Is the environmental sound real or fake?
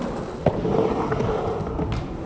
real